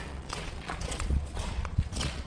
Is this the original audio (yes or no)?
no